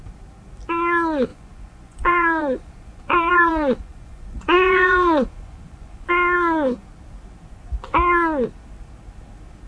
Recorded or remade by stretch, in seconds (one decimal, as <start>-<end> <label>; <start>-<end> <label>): 0.0-1.3 recorded; 1.3-6.1 remade; 6.1-9.7 recorded